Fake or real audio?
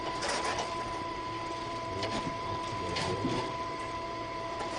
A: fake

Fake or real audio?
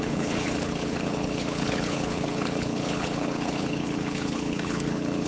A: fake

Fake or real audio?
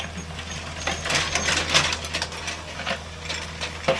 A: real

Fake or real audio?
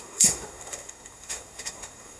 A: fake